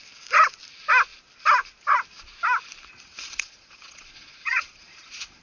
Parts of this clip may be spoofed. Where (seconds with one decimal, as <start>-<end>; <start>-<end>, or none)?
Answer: 3.1-5.4